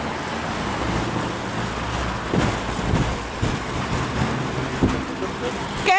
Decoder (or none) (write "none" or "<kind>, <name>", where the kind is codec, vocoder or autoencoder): none